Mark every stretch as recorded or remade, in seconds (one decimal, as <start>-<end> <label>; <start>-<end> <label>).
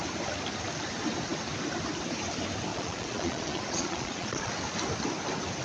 0.0-2.7 recorded; 2.7-4.5 remade; 4.5-5.6 recorded